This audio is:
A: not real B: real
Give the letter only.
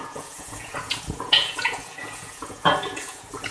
A